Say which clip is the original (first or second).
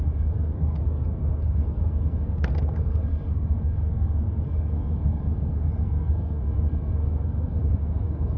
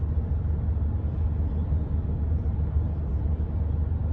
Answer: second